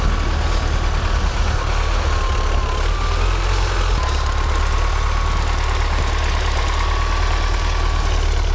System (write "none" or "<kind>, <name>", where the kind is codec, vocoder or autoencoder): none